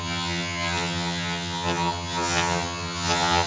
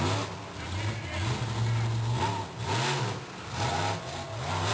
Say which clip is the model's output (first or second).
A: first